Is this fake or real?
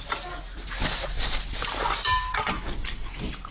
real